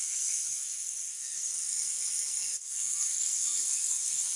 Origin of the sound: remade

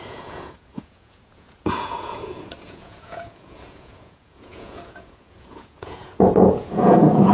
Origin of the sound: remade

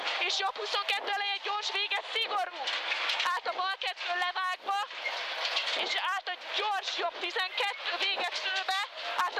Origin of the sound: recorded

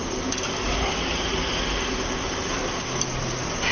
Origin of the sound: recorded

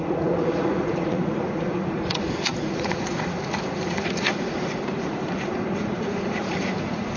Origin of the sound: remade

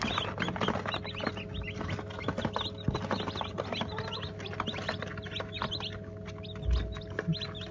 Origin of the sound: recorded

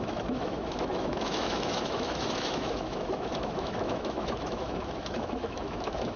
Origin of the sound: remade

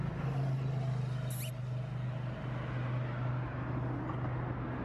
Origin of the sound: recorded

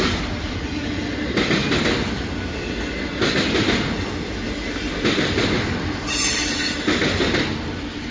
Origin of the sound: recorded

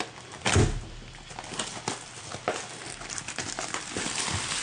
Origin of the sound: recorded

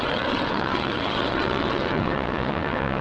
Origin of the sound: remade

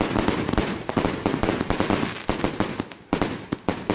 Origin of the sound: recorded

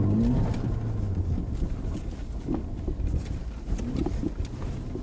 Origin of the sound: recorded